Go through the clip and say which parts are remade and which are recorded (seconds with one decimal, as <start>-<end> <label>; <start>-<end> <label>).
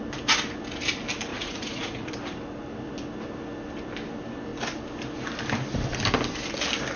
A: 0.0-1.3 recorded; 1.3-2.1 remade; 2.1-7.0 recorded